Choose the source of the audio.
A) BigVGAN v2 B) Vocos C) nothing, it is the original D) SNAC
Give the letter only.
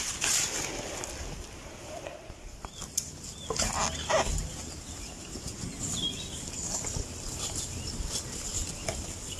C